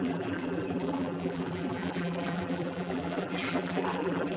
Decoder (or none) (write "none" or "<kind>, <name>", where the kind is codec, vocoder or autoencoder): vocoder, BigVGAN v2